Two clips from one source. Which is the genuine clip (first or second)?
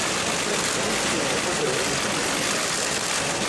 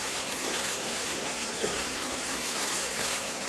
first